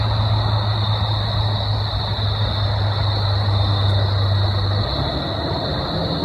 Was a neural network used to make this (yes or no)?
no